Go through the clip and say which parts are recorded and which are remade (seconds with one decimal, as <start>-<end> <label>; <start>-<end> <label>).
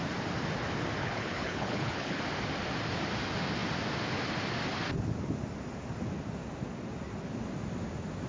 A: 0.0-1.0 recorded; 1.0-2.2 remade; 2.2-8.3 recorded